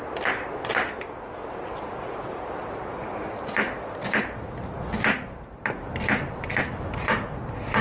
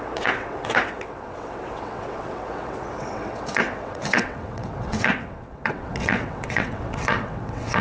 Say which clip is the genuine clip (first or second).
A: first